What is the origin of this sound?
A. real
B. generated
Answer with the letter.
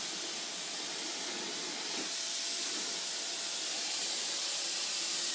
A